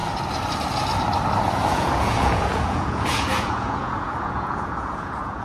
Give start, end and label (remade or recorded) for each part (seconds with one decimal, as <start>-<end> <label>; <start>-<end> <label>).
0.0-1.7 recorded; 1.7-5.4 remade